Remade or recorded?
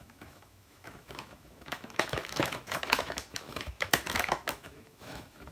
remade